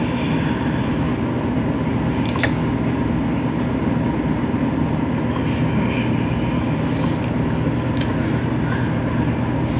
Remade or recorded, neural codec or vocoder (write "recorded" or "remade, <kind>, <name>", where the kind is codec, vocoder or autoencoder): recorded